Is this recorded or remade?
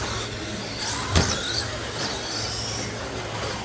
recorded